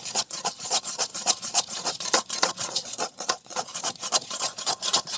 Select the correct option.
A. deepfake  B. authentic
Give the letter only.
A